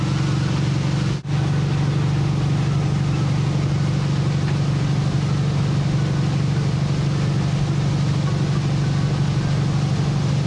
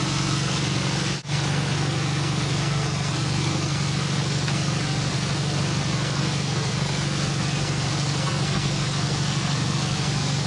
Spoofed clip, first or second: second